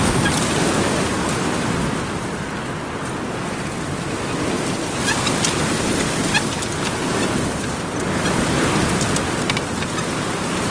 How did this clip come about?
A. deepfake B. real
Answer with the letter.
B